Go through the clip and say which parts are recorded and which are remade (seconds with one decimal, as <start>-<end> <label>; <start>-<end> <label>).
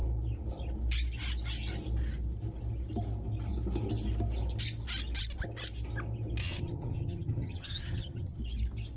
0.0-6.4 recorded; 6.4-8.4 remade; 8.4-9.0 recorded